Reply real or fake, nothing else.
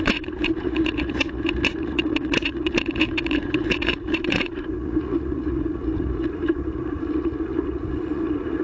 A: fake